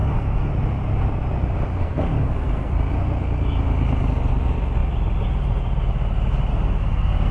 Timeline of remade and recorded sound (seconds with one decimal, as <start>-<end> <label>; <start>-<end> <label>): 0.0-0.5 remade; 0.5-1.8 recorded; 1.8-2.7 remade; 2.7-6.5 recorded; 6.5-7.3 remade